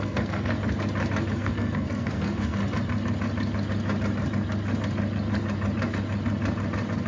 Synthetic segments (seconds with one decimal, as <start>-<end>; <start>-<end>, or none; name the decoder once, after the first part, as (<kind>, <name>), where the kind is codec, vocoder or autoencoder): 0.0-0.6 (codec, SNAC); 1.3-2.6